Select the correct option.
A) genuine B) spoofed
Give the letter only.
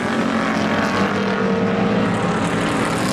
A